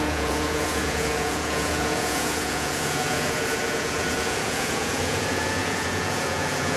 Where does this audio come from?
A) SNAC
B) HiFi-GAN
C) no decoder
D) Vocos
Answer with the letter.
D